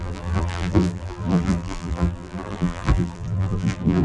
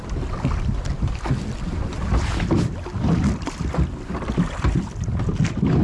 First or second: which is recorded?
second